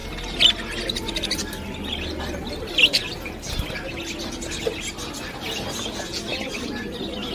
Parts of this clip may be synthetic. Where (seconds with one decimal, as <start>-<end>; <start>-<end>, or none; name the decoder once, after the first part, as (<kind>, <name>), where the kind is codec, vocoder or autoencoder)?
none